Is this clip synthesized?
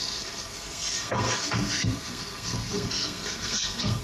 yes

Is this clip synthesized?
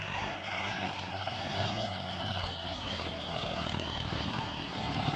yes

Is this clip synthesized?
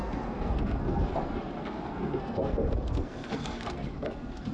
yes